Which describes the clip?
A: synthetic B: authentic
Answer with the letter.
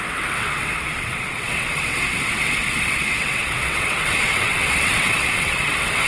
A